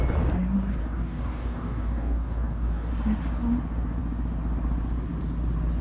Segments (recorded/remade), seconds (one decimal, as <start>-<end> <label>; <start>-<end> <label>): 0.0-0.8 recorded; 0.8-2.9 remade; 2.9-5.8 recorded